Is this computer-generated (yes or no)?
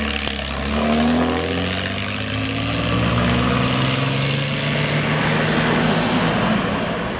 no